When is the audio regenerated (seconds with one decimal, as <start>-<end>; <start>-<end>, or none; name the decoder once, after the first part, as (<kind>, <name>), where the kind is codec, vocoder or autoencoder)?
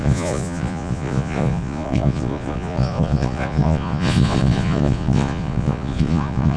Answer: 0.0-6.6 (vocoder, Vocos)